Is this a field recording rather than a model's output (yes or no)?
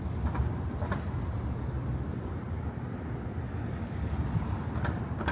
yes